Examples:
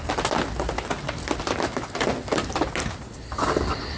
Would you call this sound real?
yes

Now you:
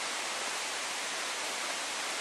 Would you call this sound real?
no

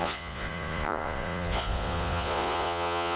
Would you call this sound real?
no